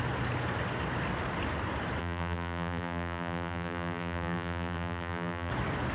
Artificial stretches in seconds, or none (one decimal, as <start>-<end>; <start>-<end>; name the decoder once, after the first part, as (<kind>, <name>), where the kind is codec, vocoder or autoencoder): 2.0-5.5 (vocoder, BigVGAN v2)